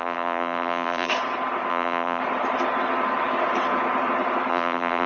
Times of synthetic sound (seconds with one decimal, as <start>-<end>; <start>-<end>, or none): 0.0-1.1; 1.7-2.2; 4.5-5.1